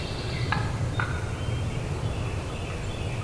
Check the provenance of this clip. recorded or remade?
recorded